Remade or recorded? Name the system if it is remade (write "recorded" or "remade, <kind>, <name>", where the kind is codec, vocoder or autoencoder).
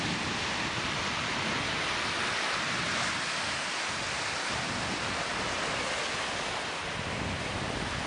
recorded